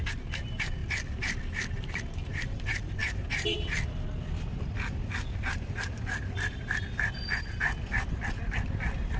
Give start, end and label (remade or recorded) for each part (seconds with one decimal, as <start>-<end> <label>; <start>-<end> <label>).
0.0-9.2 recorded